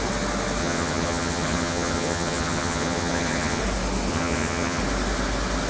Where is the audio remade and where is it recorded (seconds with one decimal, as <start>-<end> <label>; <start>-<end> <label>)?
0.0-0.6 recorded; 0.6-3.6 remade; 3.6-4.1 recorded; 4.1-4.8 remade; 4.8-5.7 recorded